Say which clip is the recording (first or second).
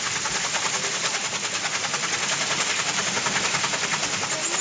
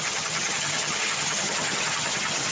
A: first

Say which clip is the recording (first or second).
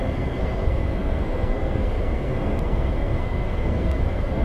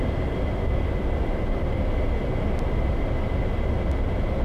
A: second